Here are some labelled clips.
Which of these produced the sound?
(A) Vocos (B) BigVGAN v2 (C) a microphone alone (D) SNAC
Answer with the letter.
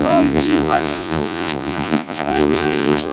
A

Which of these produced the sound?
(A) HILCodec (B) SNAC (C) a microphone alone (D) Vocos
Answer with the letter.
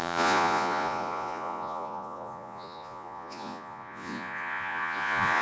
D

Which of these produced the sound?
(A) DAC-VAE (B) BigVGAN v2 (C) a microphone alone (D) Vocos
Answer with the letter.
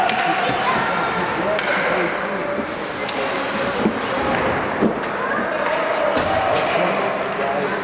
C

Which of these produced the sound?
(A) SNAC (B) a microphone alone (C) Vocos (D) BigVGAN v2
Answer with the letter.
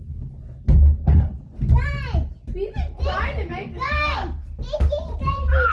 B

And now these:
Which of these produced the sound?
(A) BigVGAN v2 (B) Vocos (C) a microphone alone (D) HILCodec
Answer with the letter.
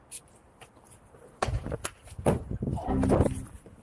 C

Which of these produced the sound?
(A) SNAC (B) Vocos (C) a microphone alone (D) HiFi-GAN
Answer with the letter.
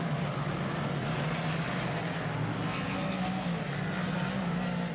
C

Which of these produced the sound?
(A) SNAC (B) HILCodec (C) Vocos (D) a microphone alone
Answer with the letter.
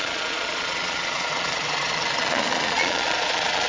C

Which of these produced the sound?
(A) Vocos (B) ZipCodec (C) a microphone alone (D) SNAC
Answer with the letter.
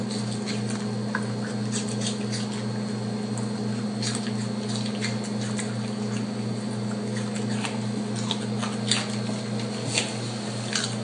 C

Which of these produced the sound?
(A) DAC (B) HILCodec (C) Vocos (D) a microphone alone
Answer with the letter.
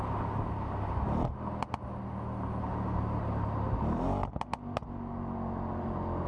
D